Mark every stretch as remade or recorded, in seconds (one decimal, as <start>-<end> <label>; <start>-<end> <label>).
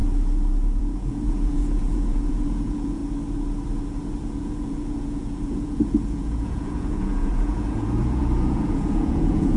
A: 0.0-0.8 recorded; 0.8-3.0 remade; 3.0-4.4 recorded; 4.4-9.6 remade